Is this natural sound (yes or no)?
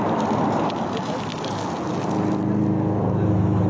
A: yes